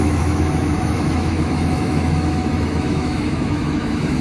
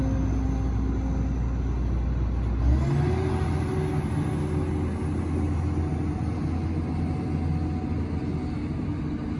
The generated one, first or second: first